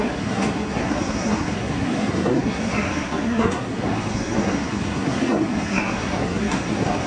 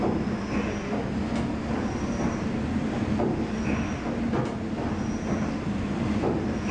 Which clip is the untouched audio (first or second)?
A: second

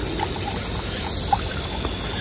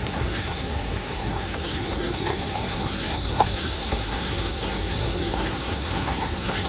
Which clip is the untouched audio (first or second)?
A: first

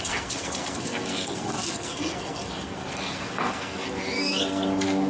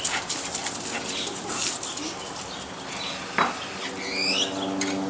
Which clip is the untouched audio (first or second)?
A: second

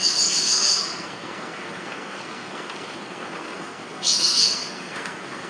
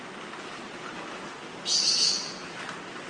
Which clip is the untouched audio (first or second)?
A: second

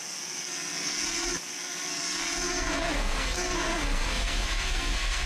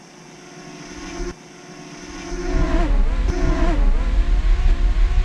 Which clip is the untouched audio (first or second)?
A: second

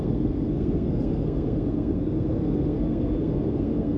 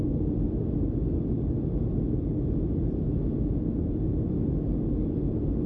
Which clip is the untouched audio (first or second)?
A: second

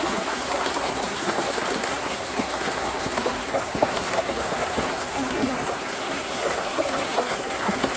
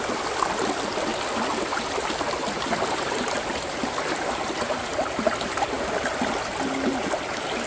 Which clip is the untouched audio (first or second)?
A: second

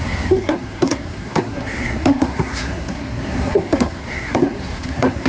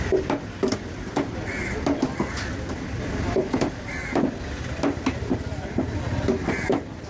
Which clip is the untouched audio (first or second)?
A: second